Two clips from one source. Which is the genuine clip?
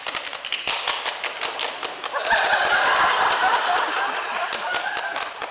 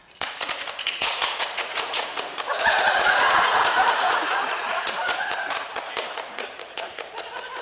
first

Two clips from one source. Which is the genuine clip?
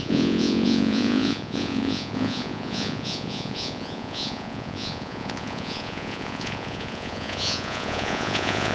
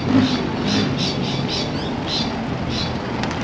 second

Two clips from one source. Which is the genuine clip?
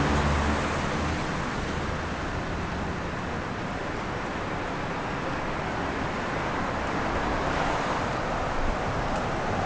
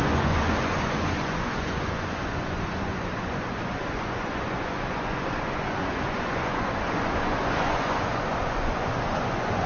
first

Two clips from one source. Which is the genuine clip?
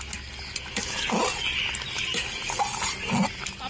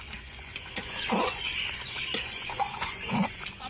first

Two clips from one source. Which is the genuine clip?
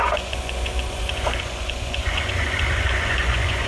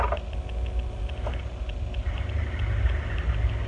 second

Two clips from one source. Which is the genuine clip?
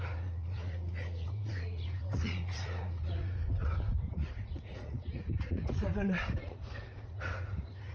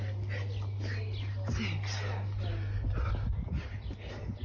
second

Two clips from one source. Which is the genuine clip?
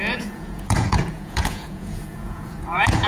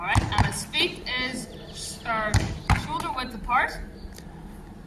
second